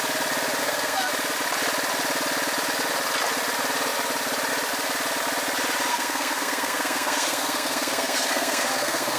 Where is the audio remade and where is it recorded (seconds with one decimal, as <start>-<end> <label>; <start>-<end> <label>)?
0.0-0.6 recorded; 0.6-1.1 remade; 1.1-5.9 recorded; 5.9-9.2 remade